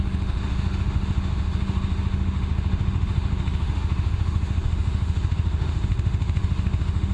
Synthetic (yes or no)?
yes